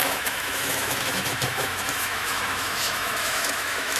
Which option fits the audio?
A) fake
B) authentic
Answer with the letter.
A